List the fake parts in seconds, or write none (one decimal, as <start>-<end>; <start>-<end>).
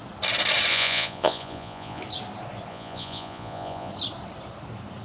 0.7-2.0; 2.7-3.9